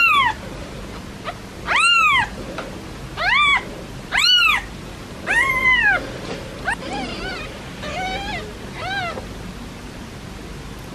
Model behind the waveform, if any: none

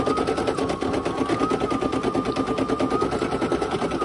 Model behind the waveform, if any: none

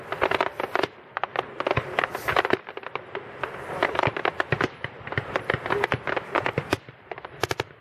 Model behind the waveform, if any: vocoder, BigVGAN v2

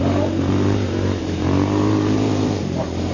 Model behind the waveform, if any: vocoder, BigVGAN v2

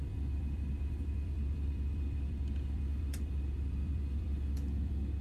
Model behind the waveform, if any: vocoder, BigVGAN v2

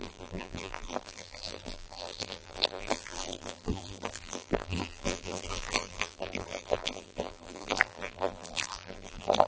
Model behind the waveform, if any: vocoder, BigVGAN v2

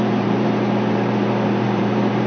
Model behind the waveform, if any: vocoder, BigVGAN v2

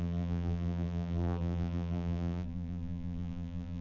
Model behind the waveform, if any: vocoder, BigVGAN v2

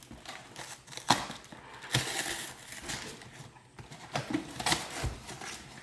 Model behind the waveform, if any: none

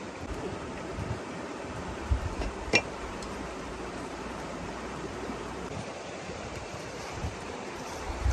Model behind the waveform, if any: vocoder, BigVGAN v2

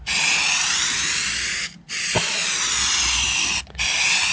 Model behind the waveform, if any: none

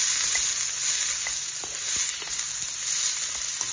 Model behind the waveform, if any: none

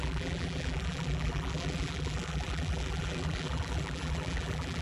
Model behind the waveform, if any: vocoder, BigVGAN v2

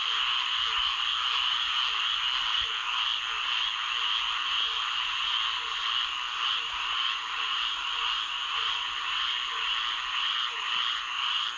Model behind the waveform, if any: none